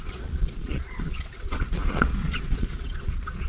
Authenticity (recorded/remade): remade